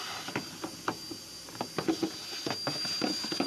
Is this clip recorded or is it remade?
recorded